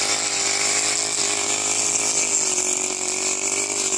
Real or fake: real